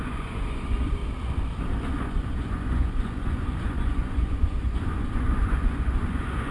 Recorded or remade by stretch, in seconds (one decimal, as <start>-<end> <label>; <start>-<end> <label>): 0.0-1.0 remade; 1.0-2.0 recorded; 2.0-6.5 remade